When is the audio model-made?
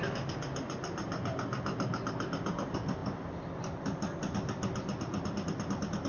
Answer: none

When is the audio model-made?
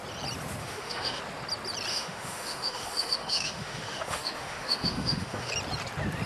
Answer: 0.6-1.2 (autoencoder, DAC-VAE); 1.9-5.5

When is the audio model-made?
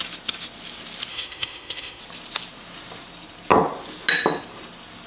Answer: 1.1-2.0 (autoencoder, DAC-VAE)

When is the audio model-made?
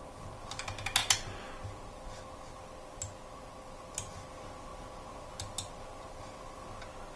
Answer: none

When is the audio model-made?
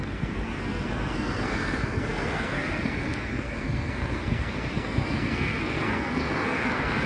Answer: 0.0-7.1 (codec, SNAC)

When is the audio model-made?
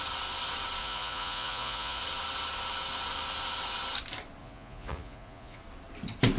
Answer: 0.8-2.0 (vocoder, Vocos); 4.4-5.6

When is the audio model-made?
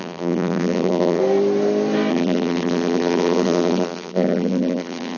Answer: 0.0-1.2 (vocoder, BigVGAN v2); 2.1-5.2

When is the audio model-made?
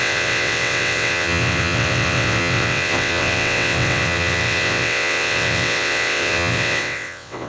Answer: 0.0-7.5 (vocoder, WaveNeXt)